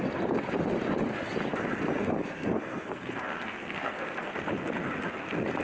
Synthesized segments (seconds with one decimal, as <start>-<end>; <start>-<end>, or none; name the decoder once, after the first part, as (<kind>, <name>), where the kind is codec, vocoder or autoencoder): 2.0-4.3 (codec, SNAC)